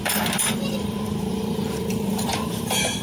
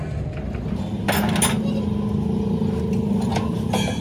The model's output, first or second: first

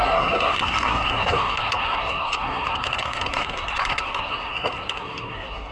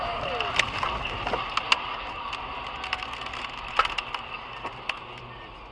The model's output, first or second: first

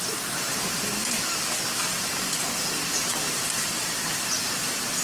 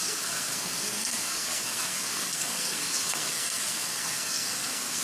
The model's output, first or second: second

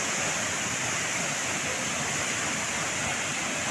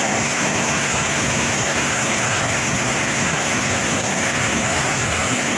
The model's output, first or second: second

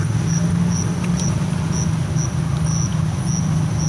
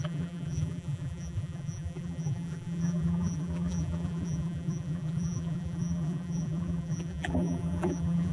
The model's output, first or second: second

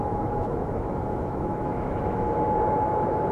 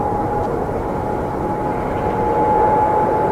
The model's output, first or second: first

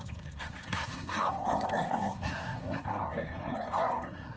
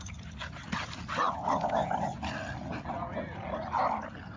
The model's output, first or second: first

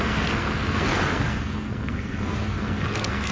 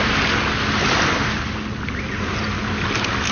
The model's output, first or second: first